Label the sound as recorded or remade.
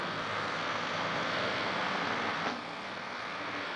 remade